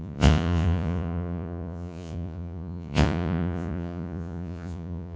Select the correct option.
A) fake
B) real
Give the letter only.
A